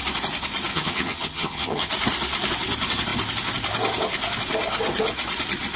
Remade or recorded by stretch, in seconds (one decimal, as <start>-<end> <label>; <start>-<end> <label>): 0.0-0.7 recorded; 0.7-1.9 remade; 1.9-5.8 recorded